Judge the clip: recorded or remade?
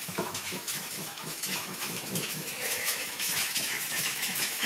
remade